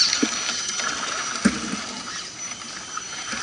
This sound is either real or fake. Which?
real